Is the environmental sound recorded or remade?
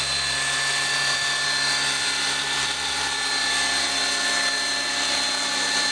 recorded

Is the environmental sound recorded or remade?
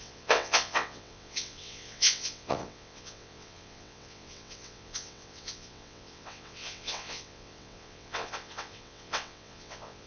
remade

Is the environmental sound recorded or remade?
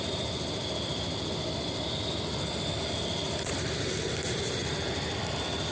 recorded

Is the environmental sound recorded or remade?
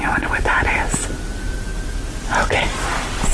recorded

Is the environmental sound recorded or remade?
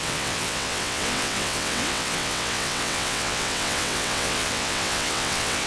remade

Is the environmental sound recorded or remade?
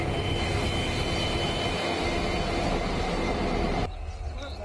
recorded